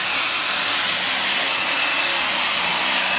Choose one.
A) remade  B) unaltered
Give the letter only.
B